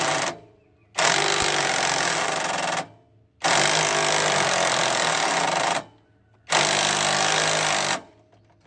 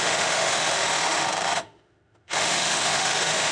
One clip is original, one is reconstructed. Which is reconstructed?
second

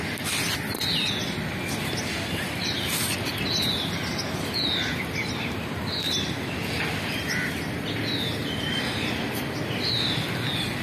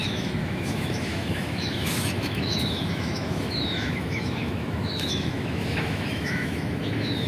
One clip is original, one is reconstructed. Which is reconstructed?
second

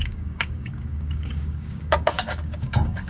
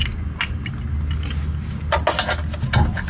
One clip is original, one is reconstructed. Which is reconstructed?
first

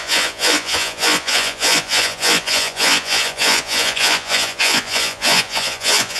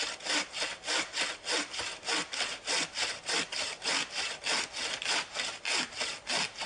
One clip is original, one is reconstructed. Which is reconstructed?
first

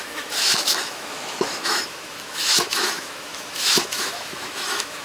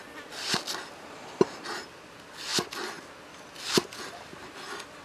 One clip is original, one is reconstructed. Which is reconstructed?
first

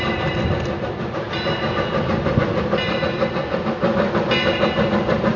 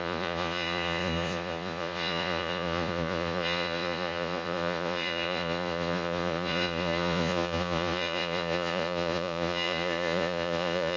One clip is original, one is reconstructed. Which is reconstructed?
second